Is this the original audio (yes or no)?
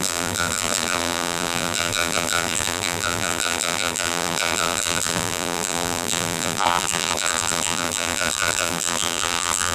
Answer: no